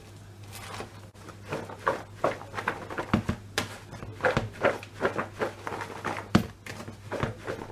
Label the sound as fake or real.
real